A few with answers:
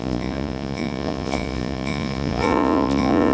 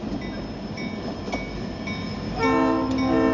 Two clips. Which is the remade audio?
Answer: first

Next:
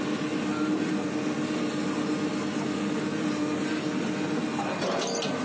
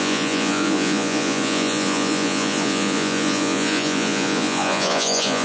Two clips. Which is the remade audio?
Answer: second